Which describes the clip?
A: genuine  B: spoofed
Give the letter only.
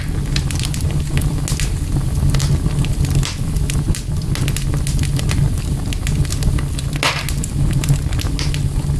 A